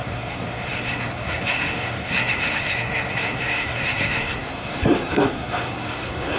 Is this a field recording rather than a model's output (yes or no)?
no